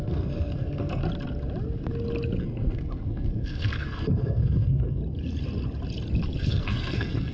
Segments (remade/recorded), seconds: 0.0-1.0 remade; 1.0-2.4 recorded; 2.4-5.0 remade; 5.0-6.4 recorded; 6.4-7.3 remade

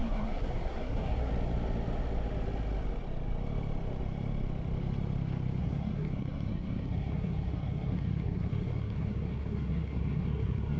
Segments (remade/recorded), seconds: 0.0-1.3 remade; 1.3-5.6 recorded; 5.6-10.8 remade

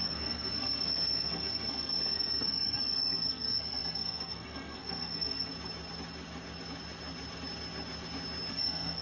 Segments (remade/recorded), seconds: 0.0-5.5 remade; 5.5-8.5 recorded; 8.5-9.0 remade